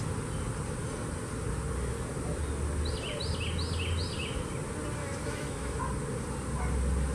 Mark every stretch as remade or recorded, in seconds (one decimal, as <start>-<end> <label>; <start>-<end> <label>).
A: 0.0-5.0 recorded; 5.0-5.8 remade; 5.8-7.1 recorded